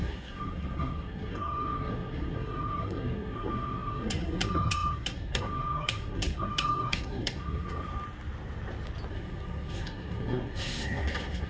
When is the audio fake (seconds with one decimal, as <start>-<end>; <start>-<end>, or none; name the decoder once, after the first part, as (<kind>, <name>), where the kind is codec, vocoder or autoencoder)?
0.0-7.9 (codec, SNAC); 9.1-11.5